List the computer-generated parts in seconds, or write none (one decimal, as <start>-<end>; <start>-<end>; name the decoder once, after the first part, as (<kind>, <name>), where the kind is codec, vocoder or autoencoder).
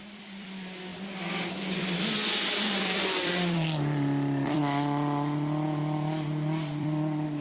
0.0-0.9 (vocoder, BigVGAN v2); 1.8-4.6; 6.8-7.4